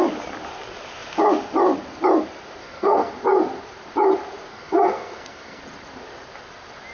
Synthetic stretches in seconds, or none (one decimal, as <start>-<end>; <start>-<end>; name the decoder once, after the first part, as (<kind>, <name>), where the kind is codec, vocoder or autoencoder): 2.6-3.1 (codec, SNAC); 4.5-5.6

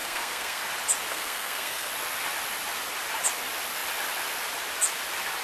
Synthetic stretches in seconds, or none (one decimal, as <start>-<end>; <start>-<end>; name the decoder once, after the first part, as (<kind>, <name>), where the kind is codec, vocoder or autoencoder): 0.0-0.6 (codec, SNAC); 1.1-1.9

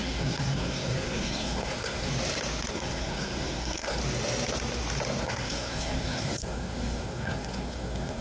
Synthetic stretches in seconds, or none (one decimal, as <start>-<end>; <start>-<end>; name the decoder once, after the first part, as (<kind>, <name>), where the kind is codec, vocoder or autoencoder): 0.0-2.1 (codec, SNAC); 2.7-4.0; 5.2-8.2